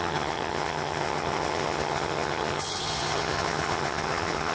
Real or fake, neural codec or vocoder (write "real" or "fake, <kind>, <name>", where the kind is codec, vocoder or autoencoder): fake, vocoder, HiFi-GAN